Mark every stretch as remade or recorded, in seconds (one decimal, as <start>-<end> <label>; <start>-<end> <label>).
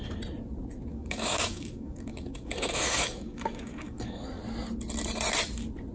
0.0-0.9 recorded; 0.9-4.4 remade; 4.4-5.9 recorded